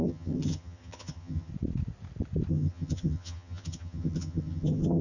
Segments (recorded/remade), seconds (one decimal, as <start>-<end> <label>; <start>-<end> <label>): 0.0-1.5 remade; 1.5-2.5 recorded; 2.5-5.0 remade